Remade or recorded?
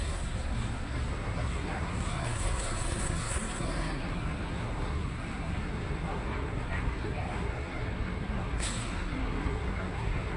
remade